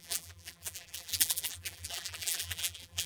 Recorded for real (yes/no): no